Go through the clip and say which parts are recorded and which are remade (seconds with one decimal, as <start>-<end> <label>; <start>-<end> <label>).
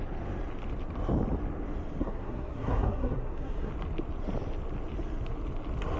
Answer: 0.0-2.0 recorded; 2.0-3.7 remade; 3.7-6.0 recorded